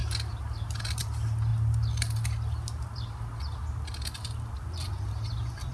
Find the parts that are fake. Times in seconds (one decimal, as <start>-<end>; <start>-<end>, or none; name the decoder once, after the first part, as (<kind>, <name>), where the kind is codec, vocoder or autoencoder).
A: none